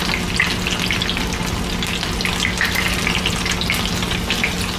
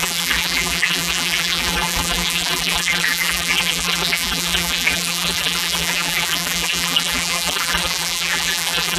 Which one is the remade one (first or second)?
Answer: second